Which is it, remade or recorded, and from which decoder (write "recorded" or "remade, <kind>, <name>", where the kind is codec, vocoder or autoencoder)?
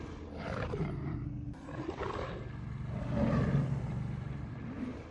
recorded